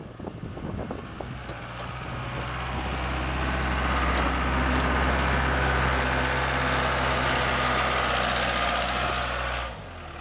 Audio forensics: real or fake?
real